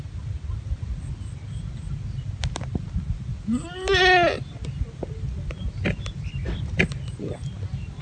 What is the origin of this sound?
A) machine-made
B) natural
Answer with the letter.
B